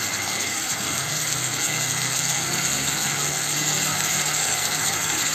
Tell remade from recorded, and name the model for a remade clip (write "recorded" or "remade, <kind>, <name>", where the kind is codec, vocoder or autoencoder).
remade, codec, SNAC